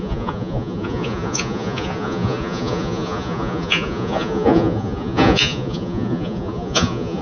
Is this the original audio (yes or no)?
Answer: no